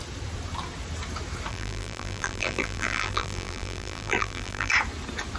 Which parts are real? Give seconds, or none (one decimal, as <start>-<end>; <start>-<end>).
0.0-1.5; 4.7-5.4